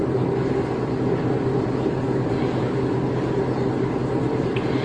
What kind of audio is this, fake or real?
real